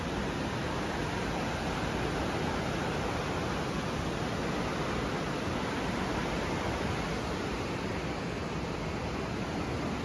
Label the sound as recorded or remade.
recorded